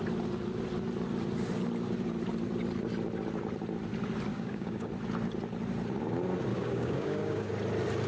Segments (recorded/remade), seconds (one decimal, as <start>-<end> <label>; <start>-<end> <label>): 0.0-4.3 recorded; 4.3-4.9 remade; 4.9-6.5 recorded; 6.5-7.5 remade; 7.5-8.1 recorded